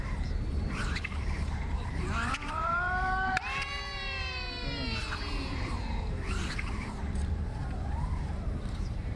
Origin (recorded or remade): remade